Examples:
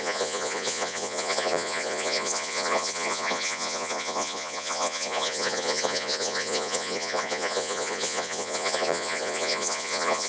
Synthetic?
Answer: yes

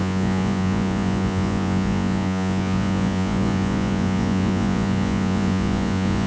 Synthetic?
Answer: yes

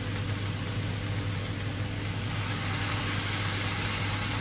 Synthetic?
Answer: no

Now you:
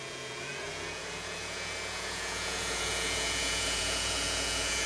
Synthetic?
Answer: yes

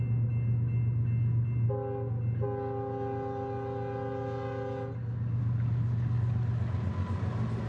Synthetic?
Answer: no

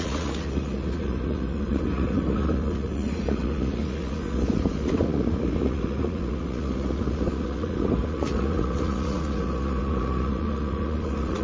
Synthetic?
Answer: yes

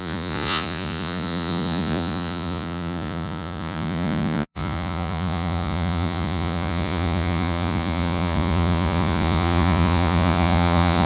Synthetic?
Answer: yes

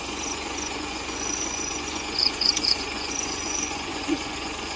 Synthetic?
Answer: yes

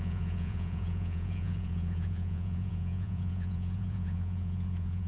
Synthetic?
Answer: yes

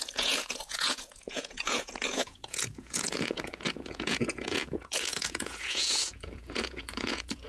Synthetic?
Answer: yes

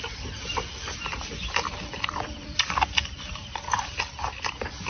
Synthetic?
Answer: no